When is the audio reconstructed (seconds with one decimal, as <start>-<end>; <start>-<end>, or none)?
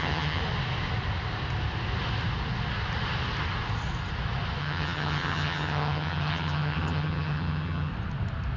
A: 0.0-0.4; 4.6-7.9